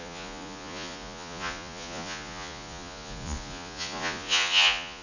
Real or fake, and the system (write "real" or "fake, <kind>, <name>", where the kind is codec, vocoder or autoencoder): fake, vocoder, Vocos